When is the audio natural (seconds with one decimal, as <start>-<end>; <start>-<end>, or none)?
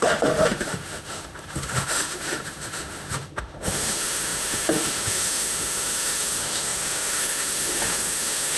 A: none